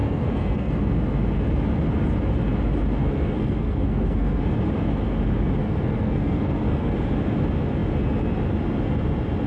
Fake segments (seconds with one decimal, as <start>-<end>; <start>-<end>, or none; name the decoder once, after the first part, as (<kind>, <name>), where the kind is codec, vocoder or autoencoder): 0.0-0.8 (codec, SNAC); 3.0-4.4; 5.6-6.9